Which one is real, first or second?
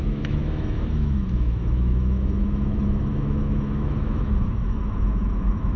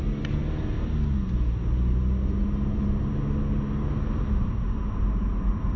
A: second